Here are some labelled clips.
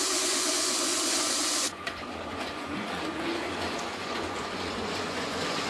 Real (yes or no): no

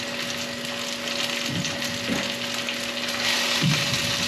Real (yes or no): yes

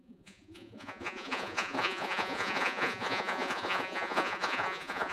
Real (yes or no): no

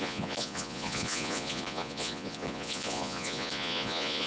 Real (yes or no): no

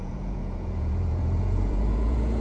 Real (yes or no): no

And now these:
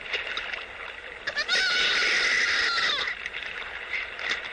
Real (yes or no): yes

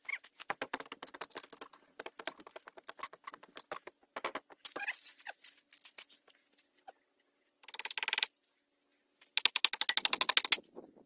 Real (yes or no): yes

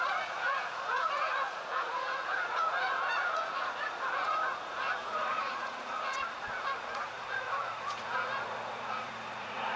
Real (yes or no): no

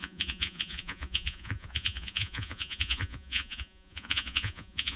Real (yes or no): no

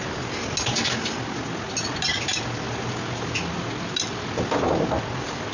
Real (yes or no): yes